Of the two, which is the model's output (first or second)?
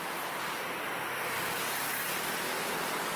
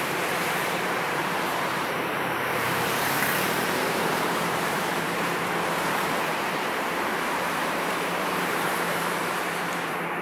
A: second